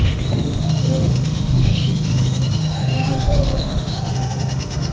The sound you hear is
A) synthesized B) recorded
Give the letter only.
A